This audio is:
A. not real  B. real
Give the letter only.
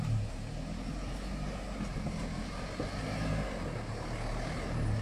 B